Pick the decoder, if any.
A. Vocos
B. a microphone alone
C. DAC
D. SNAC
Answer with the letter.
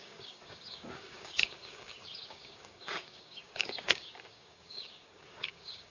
C